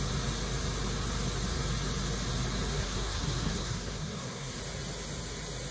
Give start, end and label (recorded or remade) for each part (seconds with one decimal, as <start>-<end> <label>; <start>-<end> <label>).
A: 0.0-2.7 recorded; 2.7-4.6 remade; 4.6-5.7 recorded